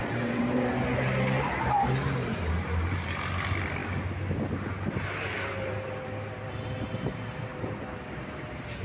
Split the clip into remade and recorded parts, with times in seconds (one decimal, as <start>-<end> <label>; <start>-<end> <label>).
0.0-0.8 remade; 0.8-8.8 recorded